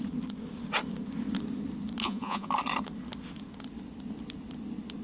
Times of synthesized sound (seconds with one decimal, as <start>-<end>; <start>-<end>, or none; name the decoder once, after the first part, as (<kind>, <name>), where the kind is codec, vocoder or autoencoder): 2.0-2.5 (vocoder, Vocos)